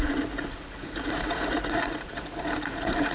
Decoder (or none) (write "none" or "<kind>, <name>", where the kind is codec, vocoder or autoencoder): vocoder, Vocos